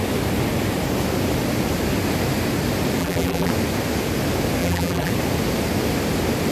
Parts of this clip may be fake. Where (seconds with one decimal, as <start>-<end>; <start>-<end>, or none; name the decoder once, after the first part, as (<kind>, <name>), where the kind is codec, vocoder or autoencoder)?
3.0-3.5 (vocoder, BigVGAN v2); 4.6-5.1